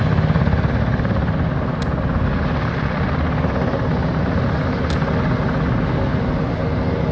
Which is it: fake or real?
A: real